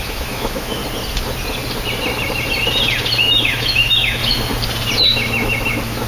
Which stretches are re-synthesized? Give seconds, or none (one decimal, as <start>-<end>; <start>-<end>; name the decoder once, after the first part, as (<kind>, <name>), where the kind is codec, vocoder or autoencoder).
0.0-0.8 (autoencoder, DAC-VAE); 3.2-4.2; 5.0-6.1